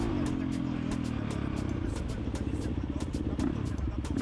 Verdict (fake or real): real